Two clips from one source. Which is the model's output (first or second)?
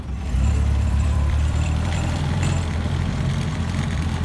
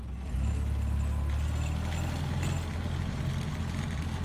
first